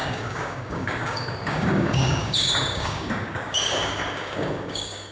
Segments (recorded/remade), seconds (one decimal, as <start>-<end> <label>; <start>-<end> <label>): 0.0-5.1 remade